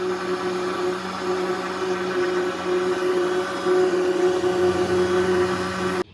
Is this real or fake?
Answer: real